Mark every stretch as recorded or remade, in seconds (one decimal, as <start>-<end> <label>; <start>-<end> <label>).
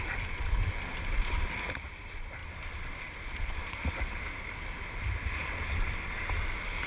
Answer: 0.0-6.9 recorded